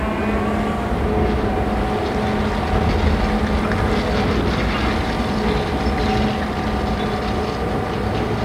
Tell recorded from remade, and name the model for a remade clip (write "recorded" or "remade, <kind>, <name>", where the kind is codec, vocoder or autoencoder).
recorded